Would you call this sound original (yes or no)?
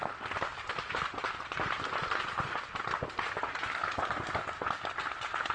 yes